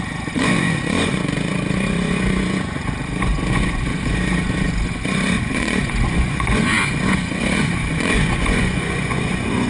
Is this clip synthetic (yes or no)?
yes